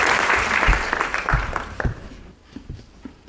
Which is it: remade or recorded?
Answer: remade